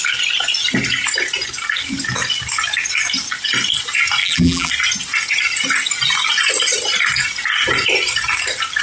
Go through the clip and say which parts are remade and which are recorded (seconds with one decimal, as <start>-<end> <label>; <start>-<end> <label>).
0.0-4.2 recorded; 4.2-4.7 remade; 4.7-8.8 recorded